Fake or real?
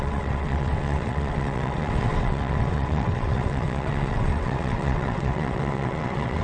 fake